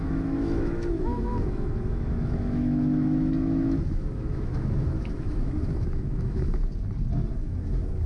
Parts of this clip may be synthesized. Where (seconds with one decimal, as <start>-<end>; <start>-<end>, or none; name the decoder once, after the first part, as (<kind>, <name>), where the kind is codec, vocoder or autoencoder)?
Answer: 0.0-6.6 (autoencoder, DAC-VAE); 7.3-8.1